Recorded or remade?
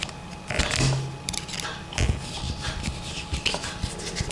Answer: recorded